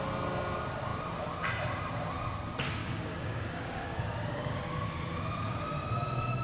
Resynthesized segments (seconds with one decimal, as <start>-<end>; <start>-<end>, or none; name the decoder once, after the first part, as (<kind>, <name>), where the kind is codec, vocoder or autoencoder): 2.8-5.1 (codec, DAC)